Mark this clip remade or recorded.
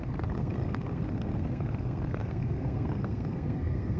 remade